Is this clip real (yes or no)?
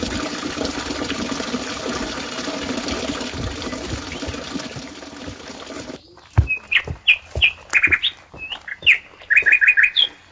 yes